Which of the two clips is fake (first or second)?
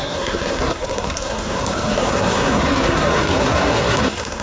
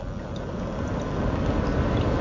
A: first